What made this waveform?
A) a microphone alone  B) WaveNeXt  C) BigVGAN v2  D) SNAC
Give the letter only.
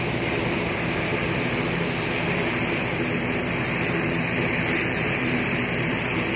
C